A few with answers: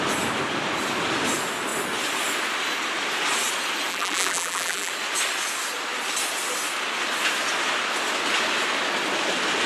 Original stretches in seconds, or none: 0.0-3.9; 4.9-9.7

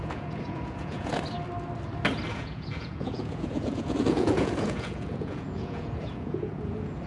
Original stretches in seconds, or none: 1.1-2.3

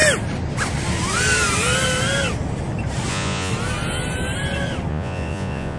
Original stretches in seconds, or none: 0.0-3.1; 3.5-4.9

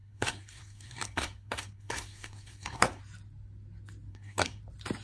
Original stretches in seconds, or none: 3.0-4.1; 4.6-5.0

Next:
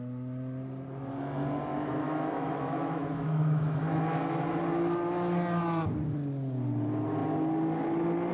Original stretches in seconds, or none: 0.0-1.7; 4.2-8.3